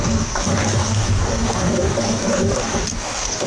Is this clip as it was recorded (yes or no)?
no